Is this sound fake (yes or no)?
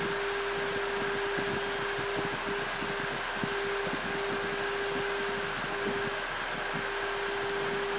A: no